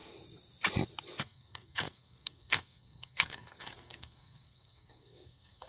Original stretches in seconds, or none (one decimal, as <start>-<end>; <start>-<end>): 0.0-1.2